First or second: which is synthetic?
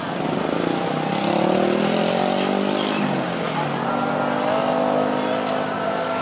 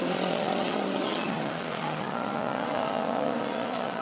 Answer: second